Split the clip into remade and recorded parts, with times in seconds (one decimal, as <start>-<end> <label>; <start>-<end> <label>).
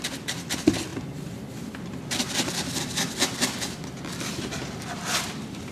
0.0-0.9 remade; 0.9-4.3 recorded; 4.3-5.7 remade